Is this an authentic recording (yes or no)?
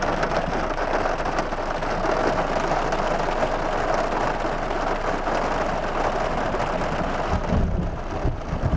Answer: yes